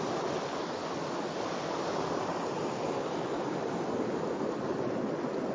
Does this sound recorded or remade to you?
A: recorded